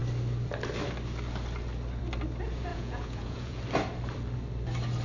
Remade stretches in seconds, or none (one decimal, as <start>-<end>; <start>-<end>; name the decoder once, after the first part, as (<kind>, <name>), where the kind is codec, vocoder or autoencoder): 2.7-3.6 (vocoder, Vocos)